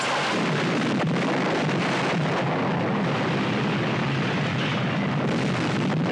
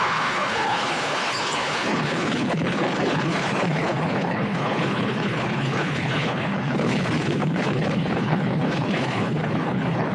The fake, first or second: second